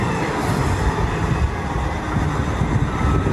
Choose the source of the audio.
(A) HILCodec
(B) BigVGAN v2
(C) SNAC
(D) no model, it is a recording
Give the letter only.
D